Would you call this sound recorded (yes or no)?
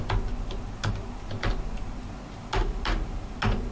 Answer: yes